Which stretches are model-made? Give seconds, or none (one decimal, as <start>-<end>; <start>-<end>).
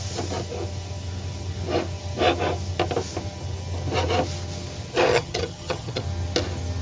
5.1-6.0